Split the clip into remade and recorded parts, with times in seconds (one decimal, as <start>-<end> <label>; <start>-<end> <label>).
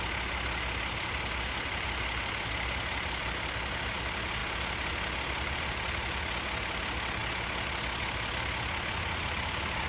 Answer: 0.0-9.9 recorded